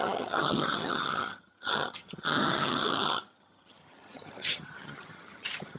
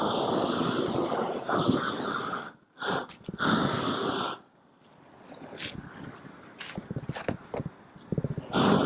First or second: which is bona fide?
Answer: second